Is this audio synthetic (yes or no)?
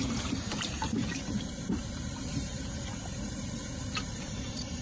yes